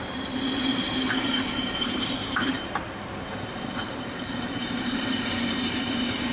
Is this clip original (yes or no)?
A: no